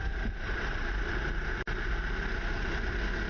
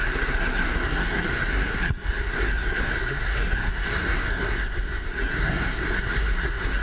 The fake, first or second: second